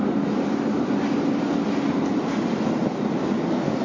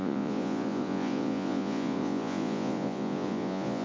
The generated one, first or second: second